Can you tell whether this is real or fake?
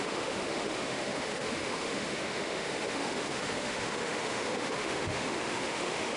fake